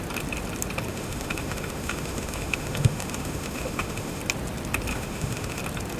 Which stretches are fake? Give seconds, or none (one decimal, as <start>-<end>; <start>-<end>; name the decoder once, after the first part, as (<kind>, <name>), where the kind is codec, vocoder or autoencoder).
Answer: 0.9-4.2 (autoencoder, DAC-VAE); 4.9-5.6